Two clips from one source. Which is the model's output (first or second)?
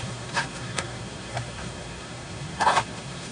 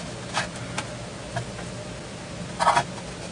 first